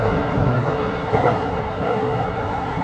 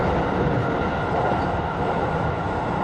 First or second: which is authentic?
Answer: second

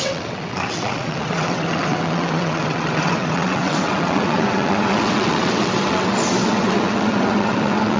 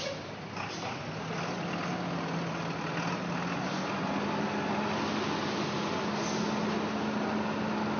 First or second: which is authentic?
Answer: second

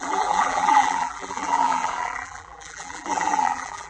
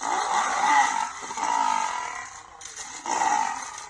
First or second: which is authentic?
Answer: second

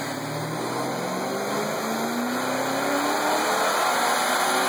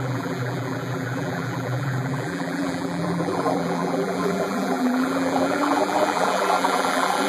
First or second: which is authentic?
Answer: first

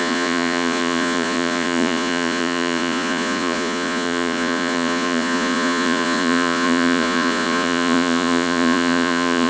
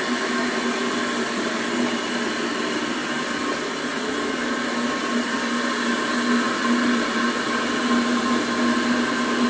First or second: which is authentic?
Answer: second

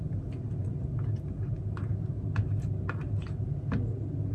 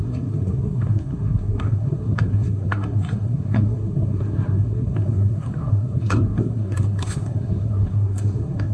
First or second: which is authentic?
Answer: first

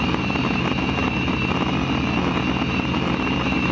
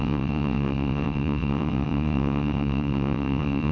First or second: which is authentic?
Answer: first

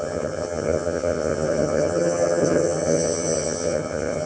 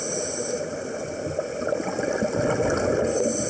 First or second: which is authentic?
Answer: second